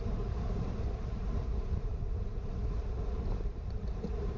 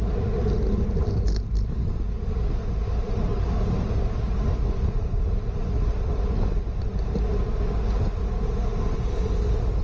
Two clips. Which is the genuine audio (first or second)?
second